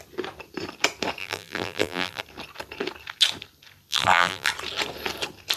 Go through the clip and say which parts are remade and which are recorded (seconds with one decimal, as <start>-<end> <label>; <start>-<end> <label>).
0.0-1.2 recorded; 1.2-2.2 remade; 2.2-3.9 recorded; 3.9-4.5 remade; 4.5-5.6 recorded

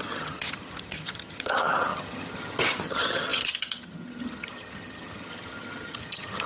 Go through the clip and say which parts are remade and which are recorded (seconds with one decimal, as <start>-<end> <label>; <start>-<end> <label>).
0.0-6.5 remade

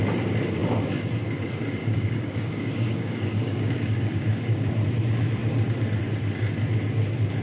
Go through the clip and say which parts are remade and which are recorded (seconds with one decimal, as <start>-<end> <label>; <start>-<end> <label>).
0.0-1.8 recorded; 1.8-4.7 remade; 4.7-7.4 recorded

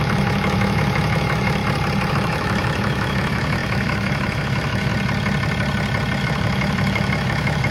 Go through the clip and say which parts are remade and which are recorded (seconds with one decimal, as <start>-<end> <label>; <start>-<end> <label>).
0.0-1.6 remade; 1.6-2.1 recorded; 2.1-4.9 remade; 4.9-6.2 recorded; 6.2-7.7 remade

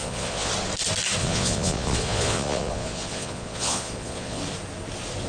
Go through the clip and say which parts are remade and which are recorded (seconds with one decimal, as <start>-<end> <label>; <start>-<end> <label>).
0.0-0.5 remade; 0.5-1.2 recorded; 1.2-4.4 remade; 4.4-5.3 recorded

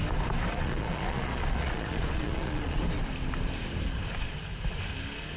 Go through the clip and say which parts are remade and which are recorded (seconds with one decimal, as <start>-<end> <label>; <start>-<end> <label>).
0.0-0.5 recorded; 0.5-2.8 remade; 2.8-5.4 recorded

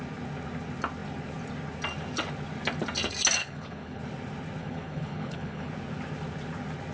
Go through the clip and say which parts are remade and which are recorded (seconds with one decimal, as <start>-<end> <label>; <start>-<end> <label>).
0.0-3.4 recorded; 3.4-4.0 remade; 4.0-4.6 recorded; 4.6-5.7 remade; 5.7-6.9 recorded